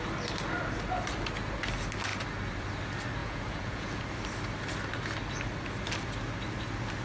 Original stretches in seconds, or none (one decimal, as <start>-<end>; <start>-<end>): 0.0-3.2; 4.0-7.0